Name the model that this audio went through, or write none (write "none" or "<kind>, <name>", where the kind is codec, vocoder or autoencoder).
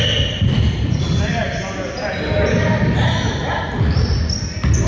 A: none